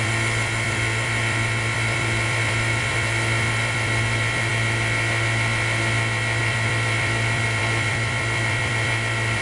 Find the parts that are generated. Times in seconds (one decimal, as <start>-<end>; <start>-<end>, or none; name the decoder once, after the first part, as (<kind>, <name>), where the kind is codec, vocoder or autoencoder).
0.0-4.5 (vocoder, BigVGAN v2); 6.4-9.4